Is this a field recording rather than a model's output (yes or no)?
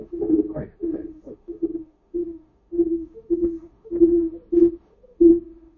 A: no